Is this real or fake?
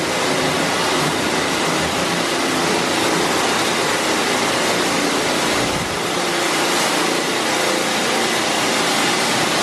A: real